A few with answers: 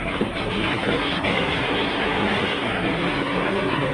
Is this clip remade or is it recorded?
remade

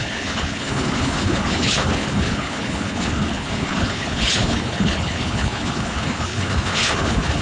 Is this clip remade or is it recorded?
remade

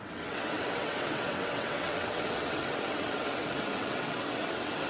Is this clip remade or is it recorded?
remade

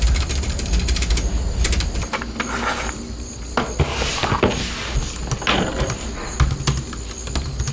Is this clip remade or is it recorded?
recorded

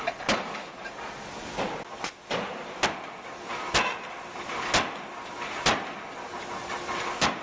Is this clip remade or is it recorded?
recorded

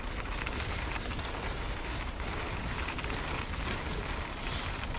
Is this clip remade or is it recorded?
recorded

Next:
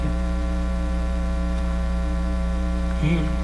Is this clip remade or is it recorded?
remade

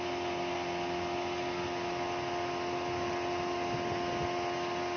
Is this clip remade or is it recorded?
recorded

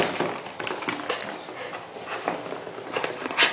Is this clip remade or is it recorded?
recorded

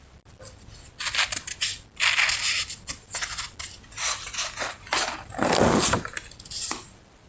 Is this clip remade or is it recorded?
recorded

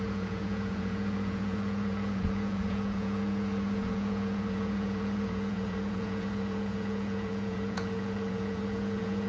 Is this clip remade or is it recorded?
remade